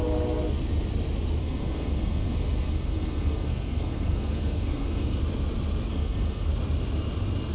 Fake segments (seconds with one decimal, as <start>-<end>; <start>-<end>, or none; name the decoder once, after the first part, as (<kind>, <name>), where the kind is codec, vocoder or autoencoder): 1.4-5.2 (codec, SNAC); 5.9-6.5